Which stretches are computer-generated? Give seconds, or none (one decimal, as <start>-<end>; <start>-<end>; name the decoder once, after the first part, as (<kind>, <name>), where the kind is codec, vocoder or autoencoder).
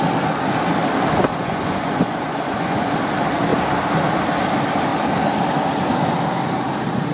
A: 1.3-2.9 (vocoder, Vocos)